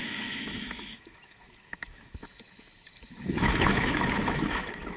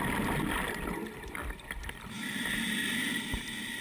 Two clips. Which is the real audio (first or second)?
second